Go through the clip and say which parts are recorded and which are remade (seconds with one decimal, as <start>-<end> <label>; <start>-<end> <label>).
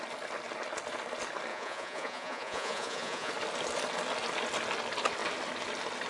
0.0-1.5 recorded; 1.5-3.3 remade; 3.3-6.1 recorded